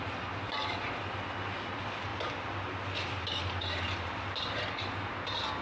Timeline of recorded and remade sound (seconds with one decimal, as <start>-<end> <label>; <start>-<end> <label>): 0.0-5.6 recorded